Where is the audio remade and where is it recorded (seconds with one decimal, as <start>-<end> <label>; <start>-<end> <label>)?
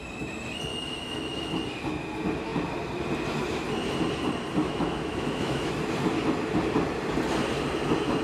0.0-0.7 recorded; 0.7-1.5 remade; 1.5-4.6 recorded; 4.6-5.8 remade; 5.8-8.2 recorded